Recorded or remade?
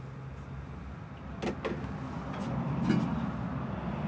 recorded